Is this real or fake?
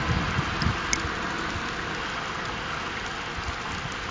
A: real